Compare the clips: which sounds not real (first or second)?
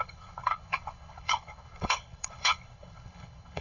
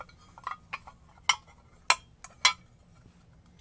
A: first